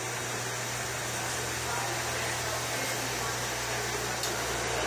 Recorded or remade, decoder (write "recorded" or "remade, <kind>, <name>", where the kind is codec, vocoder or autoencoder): recorded